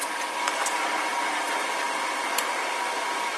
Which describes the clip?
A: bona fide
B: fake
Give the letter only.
A